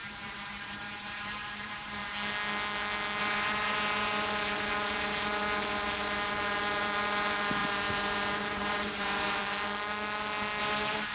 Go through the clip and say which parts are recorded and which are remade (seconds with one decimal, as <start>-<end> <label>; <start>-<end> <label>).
0.0-2.0 remade; 2.0-3.2 recorded; 3.2-9.4 remade; 9.4-10.6 recorded; 10.6-11.1 remade